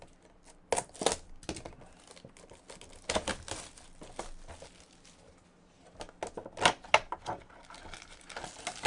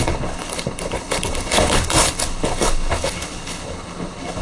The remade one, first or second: second